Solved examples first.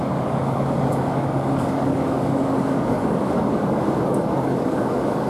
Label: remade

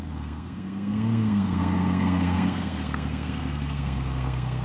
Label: remade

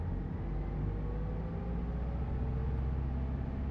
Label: recorded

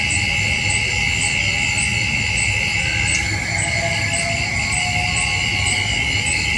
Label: recorded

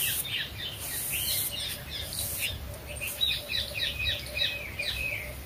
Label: recorded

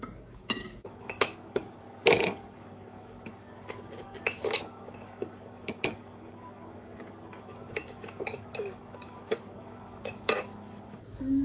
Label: remade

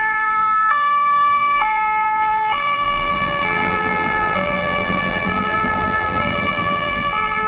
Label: remade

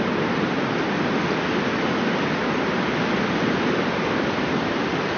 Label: recorded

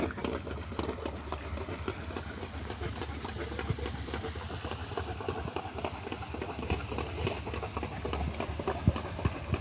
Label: recorded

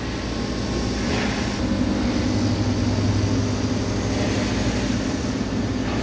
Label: recorded